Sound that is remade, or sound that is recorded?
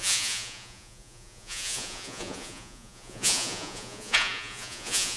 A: remade